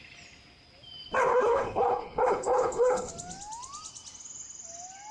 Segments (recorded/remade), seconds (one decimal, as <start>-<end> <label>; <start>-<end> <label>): 0.0-1.3 recorded; 1.3-3.1 remade; 3.1-5.1 recorded